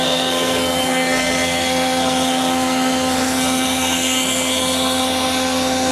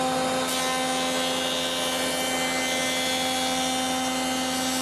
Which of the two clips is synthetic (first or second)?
first